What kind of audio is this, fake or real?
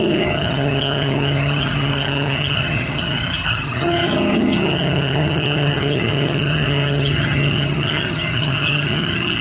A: fake